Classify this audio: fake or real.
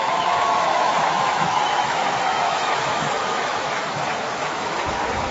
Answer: fake